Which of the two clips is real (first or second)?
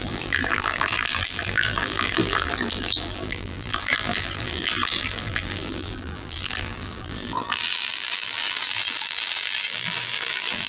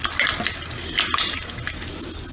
second